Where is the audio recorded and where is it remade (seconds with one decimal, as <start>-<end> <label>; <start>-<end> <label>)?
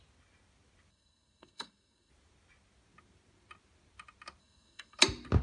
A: 0.0-0.9 recorded; 0.9-2.1 remade; 2.1-4.4 recorded; 4.4-5.0 remade; 5.0-5.4 recorded